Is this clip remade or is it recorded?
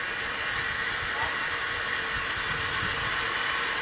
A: recorded